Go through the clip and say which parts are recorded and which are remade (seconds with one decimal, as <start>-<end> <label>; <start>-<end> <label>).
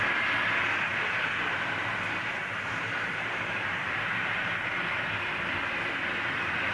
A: 0.0-2.4 recorded; 2.4-5.2 remade; 5.2-6.7 recorded